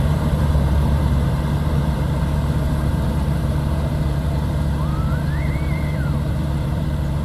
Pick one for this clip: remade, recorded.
remade